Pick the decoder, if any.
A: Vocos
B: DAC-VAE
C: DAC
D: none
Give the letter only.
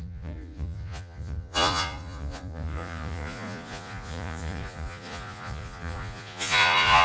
A